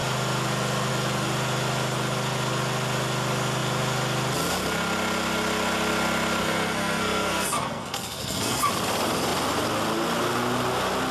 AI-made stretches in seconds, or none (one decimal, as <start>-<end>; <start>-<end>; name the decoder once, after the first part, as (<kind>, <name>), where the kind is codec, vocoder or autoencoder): 6.4-8.7 (codec, SNAC)